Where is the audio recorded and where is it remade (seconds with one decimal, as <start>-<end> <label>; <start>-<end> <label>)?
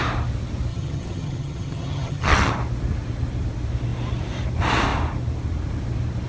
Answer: 0.0-0.7 recorded; 0.7-2.5 remade; 2.5-6.3 recorded